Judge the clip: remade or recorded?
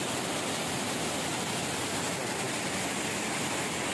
recorded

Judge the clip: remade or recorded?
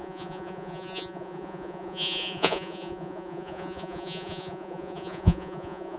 remade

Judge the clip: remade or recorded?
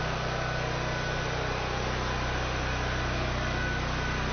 recorded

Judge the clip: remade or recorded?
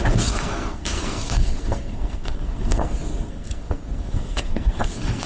remade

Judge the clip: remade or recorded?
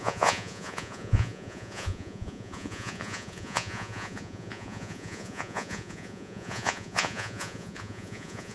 remade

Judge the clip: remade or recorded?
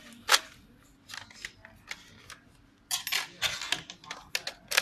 recorded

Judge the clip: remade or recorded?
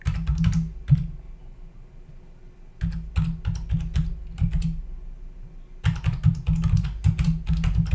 recorded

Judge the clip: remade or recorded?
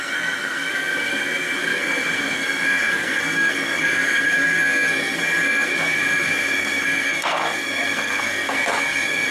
remade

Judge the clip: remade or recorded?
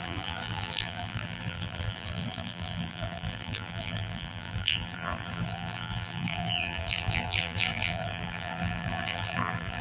remade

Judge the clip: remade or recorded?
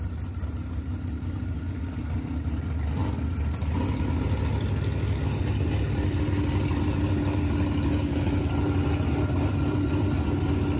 recorded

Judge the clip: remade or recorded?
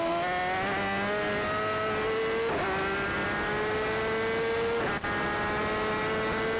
recorded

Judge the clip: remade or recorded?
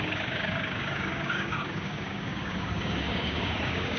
remade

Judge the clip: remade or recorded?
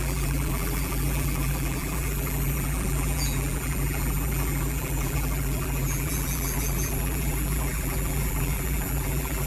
remade